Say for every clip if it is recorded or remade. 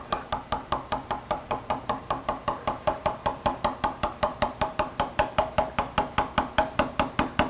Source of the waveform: recorded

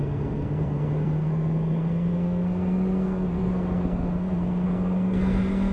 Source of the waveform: remade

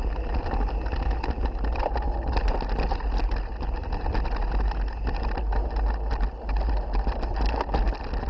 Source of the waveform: recorded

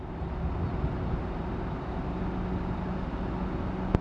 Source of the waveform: recorded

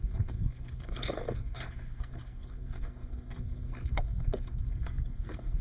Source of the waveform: remade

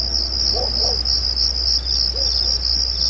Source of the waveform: recorded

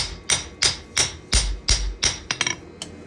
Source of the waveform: recorded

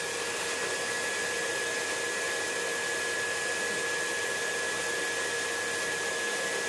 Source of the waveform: recorded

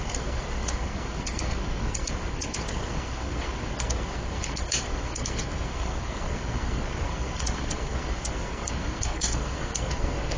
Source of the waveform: remade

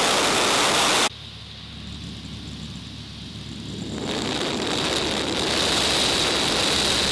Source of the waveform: recorded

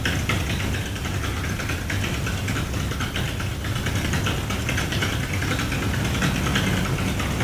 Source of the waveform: recorded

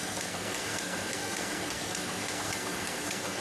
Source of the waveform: remade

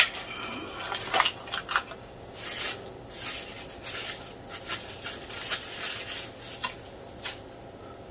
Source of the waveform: recorded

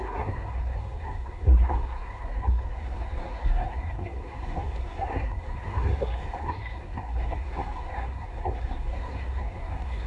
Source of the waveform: remade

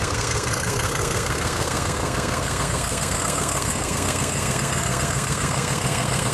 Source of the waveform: remade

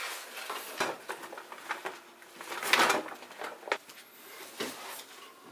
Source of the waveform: recorded